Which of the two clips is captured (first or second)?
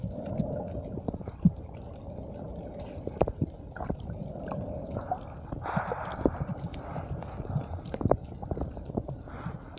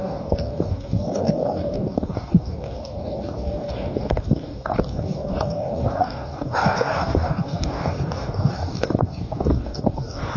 first